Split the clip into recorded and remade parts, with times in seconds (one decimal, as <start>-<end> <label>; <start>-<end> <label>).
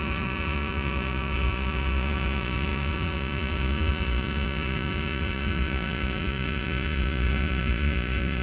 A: 0.0-8.4 remade